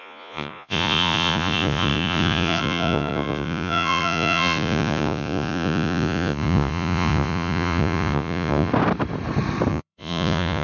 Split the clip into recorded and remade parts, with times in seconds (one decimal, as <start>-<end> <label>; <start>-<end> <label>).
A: 0.0-8.7 remade; 8.7-9.7 recorded; 9.7-10.6 remade